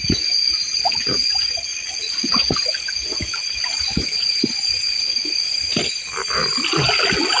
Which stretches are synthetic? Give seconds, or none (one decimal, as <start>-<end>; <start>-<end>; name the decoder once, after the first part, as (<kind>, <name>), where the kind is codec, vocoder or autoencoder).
1.7-2.5 (vocoder, Vocos)